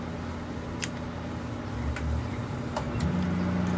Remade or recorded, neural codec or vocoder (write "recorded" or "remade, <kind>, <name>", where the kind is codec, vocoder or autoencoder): recorded